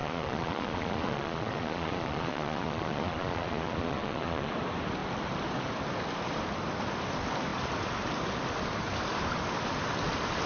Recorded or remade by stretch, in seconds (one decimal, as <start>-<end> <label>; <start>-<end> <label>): 0.0-4.5 remade; 4.5-10.5 recorded